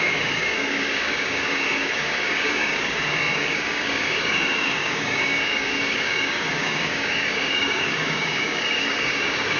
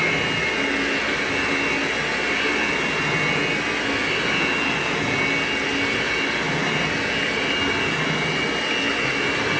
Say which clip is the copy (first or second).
first